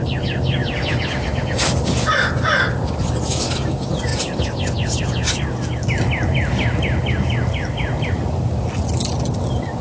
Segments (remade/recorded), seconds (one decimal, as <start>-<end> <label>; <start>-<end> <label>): 0.0-9.8 recorded